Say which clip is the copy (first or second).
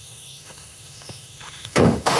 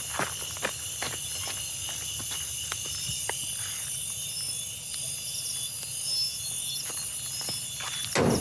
first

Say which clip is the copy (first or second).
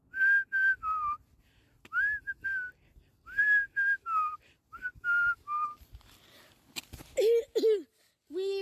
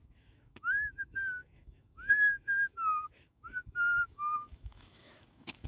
second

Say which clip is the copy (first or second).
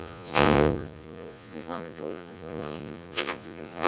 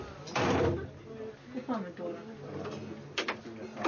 first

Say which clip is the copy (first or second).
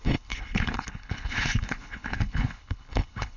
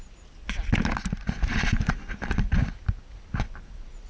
first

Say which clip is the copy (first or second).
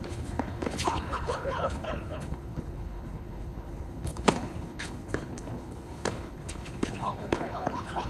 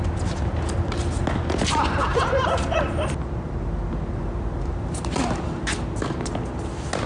first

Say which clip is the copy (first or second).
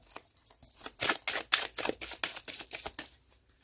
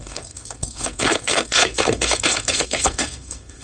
second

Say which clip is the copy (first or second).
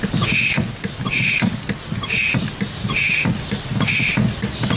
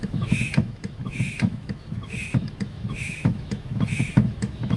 second